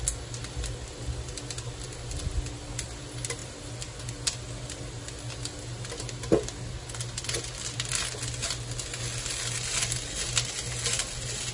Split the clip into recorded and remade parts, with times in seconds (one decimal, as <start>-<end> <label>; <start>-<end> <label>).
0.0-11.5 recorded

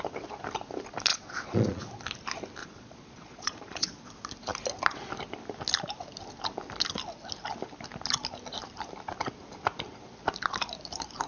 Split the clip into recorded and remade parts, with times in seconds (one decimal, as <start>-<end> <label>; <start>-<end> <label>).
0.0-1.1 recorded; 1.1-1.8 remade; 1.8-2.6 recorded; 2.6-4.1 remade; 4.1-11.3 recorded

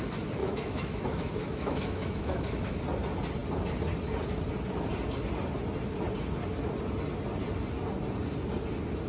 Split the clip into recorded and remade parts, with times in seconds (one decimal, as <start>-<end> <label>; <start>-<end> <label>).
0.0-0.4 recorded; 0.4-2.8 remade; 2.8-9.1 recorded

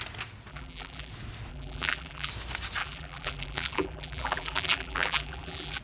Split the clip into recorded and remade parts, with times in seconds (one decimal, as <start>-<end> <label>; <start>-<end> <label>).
0.0-0.5 recorded; 0.5-1.1 remade; 1.1-1.5 recorded; 1.5-2.3 remade; 2.3-2.8 recorded; 2.8-5.8 remade

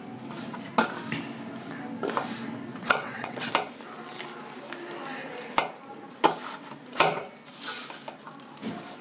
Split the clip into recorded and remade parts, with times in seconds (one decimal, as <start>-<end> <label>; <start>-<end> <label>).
0.0-2.7 recorded; 2.7-3.5 remade; 3.5-9.0 recorded